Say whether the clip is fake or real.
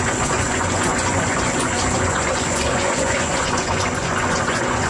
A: fake